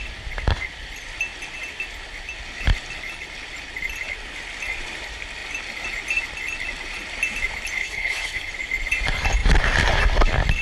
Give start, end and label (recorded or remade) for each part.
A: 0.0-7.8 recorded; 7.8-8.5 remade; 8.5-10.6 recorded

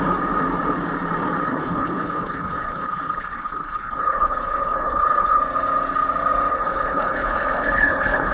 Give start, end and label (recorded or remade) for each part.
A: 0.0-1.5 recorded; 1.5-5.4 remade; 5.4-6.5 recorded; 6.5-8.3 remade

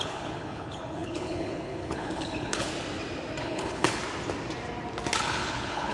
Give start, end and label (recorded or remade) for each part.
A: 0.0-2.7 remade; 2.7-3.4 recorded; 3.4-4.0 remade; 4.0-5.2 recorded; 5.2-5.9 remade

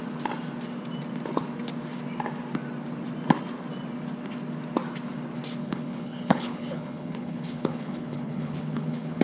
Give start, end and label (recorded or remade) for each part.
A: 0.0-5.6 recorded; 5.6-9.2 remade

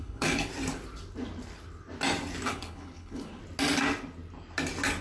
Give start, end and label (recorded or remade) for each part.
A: 0.0-0.5 remade; 0.5-2.5 recorded; 2.5-3.4 remade; 3.4-5.0 recorded

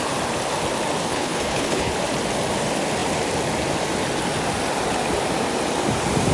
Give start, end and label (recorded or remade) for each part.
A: 0.0-1.1 recorded; 1.1-1.9 remade; 1.9-6.3 recorded

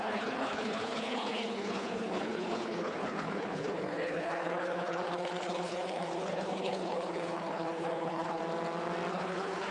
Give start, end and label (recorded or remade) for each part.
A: 0.0-8.4 remade; 8.4-9.1 recorded; 9.1-9.7 remade